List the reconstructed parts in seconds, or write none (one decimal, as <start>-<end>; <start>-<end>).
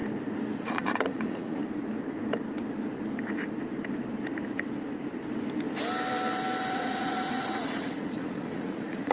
0.6-1.6; 6.7-9.1